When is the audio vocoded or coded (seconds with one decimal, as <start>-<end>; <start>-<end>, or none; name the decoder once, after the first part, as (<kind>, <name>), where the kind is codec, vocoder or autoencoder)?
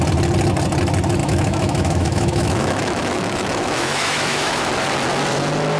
1.2-4.7 (autoencoder, DAC-VAE)